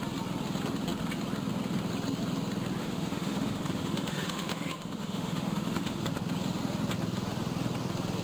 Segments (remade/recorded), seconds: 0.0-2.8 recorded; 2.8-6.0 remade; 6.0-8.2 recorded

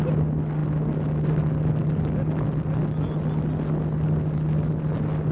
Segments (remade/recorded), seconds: 0.0-5.3 recorded

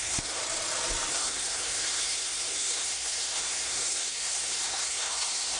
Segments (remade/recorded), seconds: 0.0-0.4 remade; 0.4-1.1 recorded; 1.1-5.6 remade

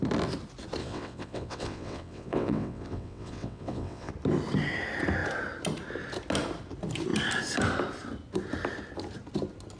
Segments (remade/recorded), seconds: 0.0-0.8 recorded; 0.8-4.1 remade; 4.1-9.8 recorded

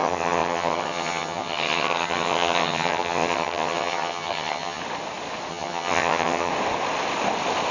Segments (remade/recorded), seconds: 0.0-4.8 remade; 4.8-5.5 recorded; 5.5-6.5 remade; 6.5-7.7 recorded

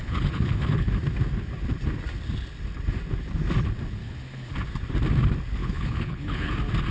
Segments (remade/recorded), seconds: 0.0-0.9 remade; 0.9-4.0 recorded; 4.0-4.5 remade; 4.5-5.6 recorded; 5.6-6.5 remade; 6.5-6.9 recorded

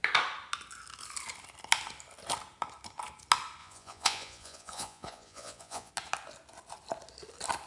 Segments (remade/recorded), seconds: 0.0-3.6 recorded; 3.6-5.9 remade; 5.9-7.7 recorded